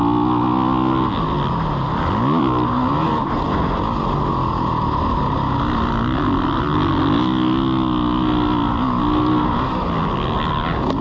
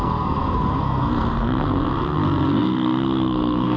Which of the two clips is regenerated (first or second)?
second